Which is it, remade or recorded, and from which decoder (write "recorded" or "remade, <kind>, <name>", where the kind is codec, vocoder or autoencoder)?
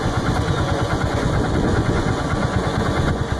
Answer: remade, vocoder, Vocos